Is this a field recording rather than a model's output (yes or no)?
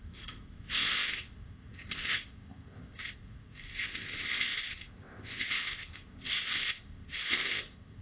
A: no